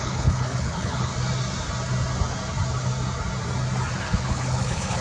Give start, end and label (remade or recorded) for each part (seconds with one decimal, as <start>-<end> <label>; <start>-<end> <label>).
0.0-1.1 remade; 1.1-4.0 recorded; 4.0-5.0 remade